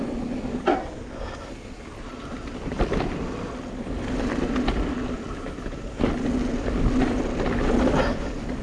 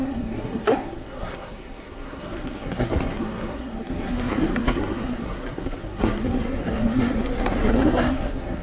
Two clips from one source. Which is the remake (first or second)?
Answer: second